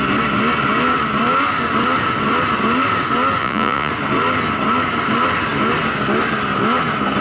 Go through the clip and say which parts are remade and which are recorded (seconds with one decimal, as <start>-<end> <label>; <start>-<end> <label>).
0.0-3.4 recorded; 3.4-3.9 remade; 3.9-7.2 recorded